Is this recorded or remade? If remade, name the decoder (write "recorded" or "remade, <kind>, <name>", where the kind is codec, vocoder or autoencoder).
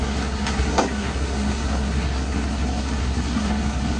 remade, codec, SNAC